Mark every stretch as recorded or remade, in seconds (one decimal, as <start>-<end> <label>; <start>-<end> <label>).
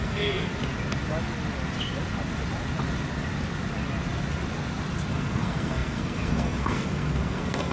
0.0-0.5 remade; 0.5-5.1 recorded; 5.1-7.7 remade